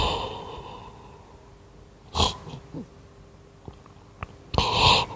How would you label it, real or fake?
real